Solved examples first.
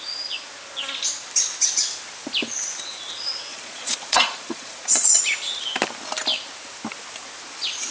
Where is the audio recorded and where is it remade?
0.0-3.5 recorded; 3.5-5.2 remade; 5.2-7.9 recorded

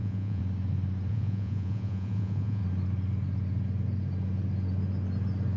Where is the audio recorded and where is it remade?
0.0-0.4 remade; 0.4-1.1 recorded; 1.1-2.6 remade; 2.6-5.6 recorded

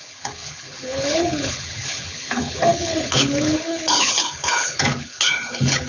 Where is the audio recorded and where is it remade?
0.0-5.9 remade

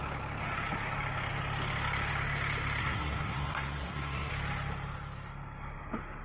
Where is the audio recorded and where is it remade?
0.0-2.8 recorded; 2.8-4.3 remade; 4.3-6.2 recorded